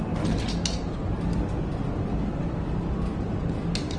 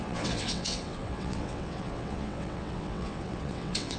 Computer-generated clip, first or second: second